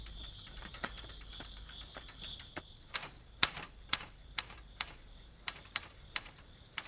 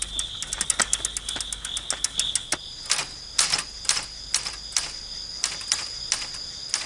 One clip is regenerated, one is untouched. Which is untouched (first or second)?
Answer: second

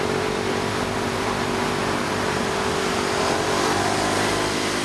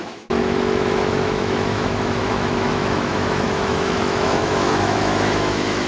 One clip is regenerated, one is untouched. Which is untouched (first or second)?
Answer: first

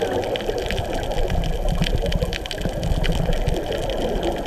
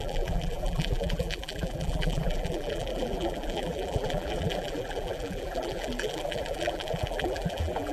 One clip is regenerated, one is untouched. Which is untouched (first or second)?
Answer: first